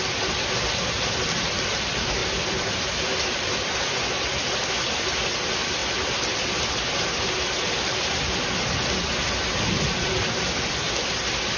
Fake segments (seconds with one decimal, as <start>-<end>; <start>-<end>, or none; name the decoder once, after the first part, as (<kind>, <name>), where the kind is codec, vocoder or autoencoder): 2.2-3.9 (vocoder, BigVGAN v2)